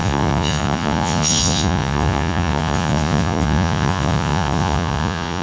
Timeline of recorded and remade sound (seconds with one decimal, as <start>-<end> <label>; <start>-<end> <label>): 0.0-5.4 remade